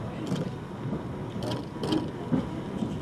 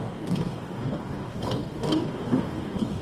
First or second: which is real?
first